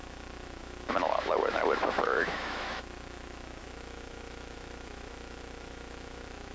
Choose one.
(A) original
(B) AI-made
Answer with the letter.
B